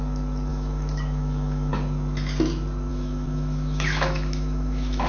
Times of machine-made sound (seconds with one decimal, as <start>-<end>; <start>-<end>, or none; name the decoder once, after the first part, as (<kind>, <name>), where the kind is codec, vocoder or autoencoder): 0.5-1.7 (autoencoder, DAC-VAE); 2.9-5.1